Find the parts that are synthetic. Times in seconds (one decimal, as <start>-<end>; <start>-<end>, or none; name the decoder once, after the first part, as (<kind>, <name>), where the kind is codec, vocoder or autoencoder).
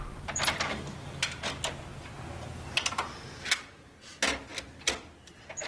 none